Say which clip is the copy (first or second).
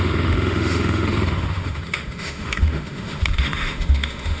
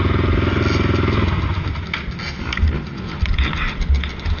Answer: first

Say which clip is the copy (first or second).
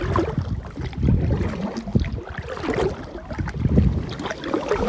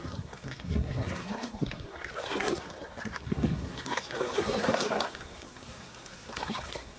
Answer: second